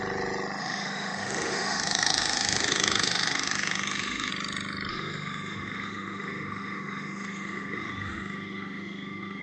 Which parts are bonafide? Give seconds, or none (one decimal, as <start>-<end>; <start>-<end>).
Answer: 0.0-0.6; 4.3-4.9